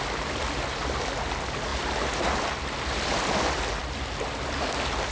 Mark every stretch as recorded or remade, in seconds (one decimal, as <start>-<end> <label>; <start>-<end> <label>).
0.0-5.1 recorded